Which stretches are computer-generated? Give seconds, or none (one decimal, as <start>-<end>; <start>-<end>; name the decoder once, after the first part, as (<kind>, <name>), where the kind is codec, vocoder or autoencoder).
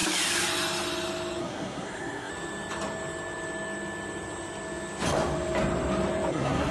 1.4-2.3 (codec, SNAC); 6.3-6.7